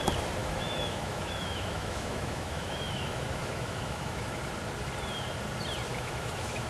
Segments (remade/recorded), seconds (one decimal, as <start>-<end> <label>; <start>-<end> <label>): 0.0-0.4 recorded; 0.4-4.4 remade; 4.4-5.9 recorded; 5.9-6.7 remade